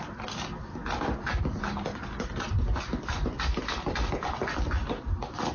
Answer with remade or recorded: recorded